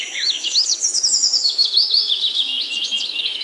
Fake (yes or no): yes